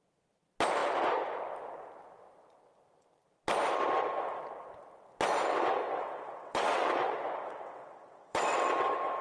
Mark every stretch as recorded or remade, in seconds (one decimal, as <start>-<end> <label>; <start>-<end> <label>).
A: 0.0-5.5 recorded; 5.5-9.2 remade